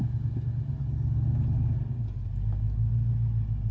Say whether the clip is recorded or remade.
recorded